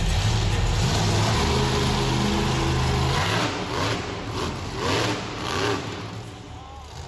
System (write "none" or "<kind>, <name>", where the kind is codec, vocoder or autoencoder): none